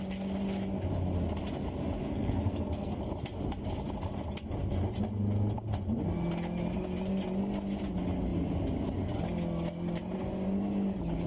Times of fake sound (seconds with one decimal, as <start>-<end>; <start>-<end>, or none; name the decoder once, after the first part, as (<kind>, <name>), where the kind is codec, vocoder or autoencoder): 2.0-3.0 (codec, SNAC)